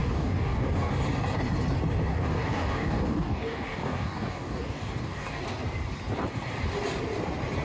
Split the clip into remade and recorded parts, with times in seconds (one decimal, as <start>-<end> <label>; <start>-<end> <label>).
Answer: 0.0-0.9 remade; 0.9-2.1 recorded; 2.1-5.4 remade; 5.4-7.6 recorded